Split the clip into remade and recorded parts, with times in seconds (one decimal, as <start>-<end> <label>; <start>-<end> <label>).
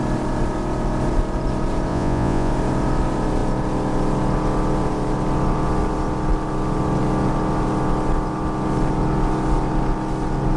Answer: 0.0-1.9 recorded; 1.9-2.5 remade; 2.5-10.6 recorded